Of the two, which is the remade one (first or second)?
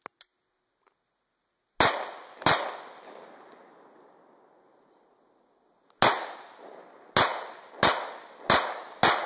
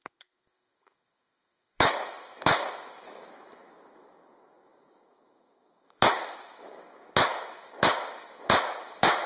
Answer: second